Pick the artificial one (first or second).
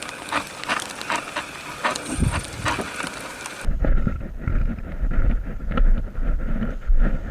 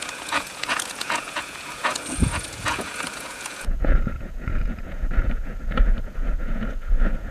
second